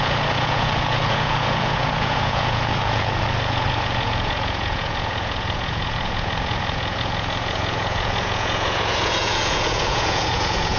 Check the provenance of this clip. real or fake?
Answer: fake